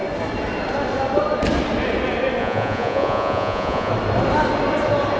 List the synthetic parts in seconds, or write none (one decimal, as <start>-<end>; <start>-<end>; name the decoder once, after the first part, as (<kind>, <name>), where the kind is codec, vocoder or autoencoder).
2.4-3.9 (vocoder, Vocos)

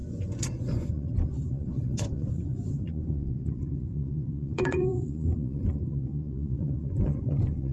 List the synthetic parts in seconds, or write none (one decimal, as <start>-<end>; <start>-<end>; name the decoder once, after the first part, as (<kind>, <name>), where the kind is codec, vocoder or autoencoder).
0.0-7.7 (vocoder, Vocos)

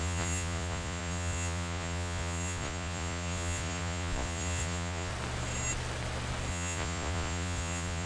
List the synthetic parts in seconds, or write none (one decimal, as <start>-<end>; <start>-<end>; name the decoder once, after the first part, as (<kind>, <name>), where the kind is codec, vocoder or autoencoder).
0.0-5.1 (vocoder, Vocos); 6.5-8.1

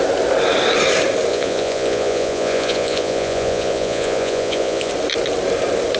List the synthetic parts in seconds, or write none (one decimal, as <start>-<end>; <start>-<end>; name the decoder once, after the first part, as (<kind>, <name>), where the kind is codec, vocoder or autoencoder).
1.3-4.9 (vocoder, Vocos)